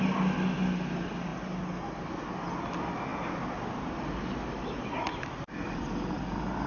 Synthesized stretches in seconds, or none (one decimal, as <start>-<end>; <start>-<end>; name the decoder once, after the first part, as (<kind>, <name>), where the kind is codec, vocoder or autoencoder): none